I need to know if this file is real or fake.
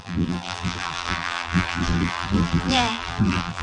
fake